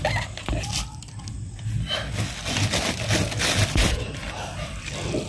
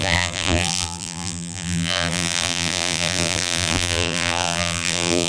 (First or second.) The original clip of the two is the first